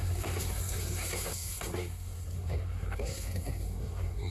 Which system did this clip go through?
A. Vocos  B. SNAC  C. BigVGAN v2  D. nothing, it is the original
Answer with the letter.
B